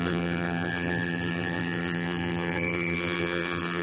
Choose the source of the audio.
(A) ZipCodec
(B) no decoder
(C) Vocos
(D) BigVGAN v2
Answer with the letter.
D